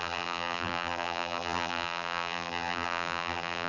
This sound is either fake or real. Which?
fake